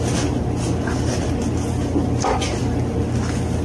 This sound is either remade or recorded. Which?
recorded